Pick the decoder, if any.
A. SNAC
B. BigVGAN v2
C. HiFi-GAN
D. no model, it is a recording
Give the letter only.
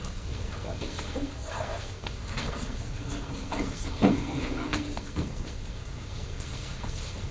A